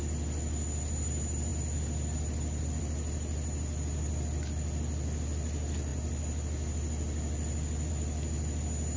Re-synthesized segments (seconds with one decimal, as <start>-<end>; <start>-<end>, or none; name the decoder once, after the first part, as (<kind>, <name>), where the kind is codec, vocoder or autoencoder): none

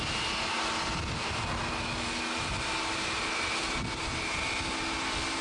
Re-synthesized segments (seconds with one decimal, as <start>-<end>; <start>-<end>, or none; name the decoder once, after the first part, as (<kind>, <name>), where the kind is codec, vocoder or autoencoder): none

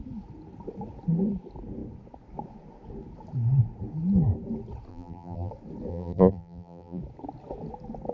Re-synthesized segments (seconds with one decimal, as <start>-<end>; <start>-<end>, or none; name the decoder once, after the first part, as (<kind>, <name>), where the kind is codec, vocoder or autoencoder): 4.9-5.5 (vocoder, BigVGAN v2); 5.9-7.0

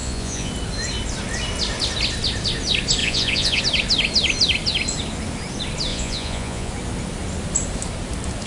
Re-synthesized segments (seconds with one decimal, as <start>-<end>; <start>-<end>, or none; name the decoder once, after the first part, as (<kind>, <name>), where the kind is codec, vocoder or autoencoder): 0.0-0.5 (vocoder, Vocos); 3.0-3.6; 5.9-6.7

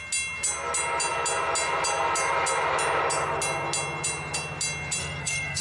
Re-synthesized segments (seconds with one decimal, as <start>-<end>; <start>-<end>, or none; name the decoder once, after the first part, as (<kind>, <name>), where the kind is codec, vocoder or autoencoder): 5.0-5.6 (codec, SNAC)

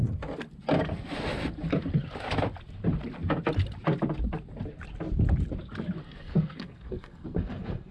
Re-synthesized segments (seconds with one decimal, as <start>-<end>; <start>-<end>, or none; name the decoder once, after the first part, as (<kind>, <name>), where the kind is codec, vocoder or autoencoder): 6.0-7.9 (codec, SNAC)

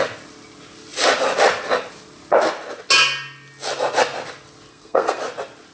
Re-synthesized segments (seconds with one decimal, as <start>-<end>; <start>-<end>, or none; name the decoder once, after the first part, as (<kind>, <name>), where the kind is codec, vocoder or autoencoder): 4.7-5.2 (codec, SNAC)